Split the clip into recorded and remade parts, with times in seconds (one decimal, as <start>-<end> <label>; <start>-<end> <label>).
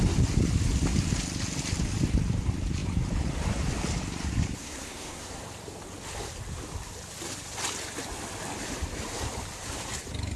0.0-4.6 recorded; 4.6-5.4 remade; 5.4-10.4 recorded